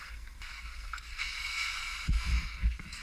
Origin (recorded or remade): remade